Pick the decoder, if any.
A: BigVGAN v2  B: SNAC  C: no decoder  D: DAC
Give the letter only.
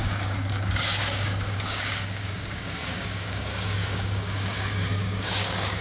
D